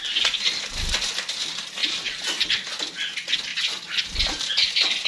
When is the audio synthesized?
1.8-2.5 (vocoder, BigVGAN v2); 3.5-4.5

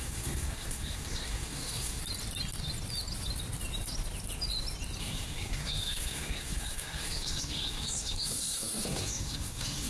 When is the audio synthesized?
0.0-2.0 (codec, SNAC); 5.0-9.9

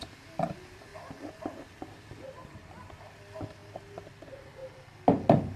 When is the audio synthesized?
0.9-3.0 (vocoder, BigVGAN v2); 3.6-4.1